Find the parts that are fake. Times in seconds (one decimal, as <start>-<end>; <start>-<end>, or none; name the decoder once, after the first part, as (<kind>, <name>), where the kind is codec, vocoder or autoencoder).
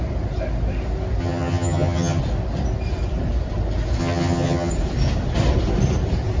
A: 1.2-2.2 (vocoder, HiFi-GAN); 4.0-4.7